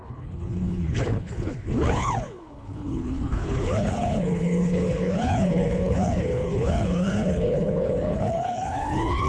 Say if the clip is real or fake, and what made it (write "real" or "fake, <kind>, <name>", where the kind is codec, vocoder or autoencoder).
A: fake, codec, HILCodec